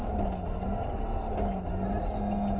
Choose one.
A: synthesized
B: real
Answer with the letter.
B